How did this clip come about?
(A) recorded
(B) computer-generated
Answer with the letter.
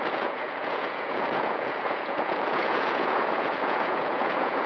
B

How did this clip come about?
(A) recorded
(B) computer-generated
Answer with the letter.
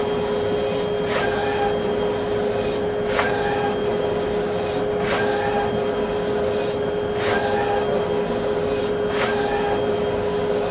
A